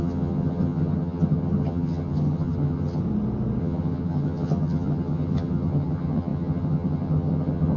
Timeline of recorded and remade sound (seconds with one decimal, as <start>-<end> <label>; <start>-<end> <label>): 0.0-3.0 remade; 3.0-3.6 recorded; 3.6-7.8 remade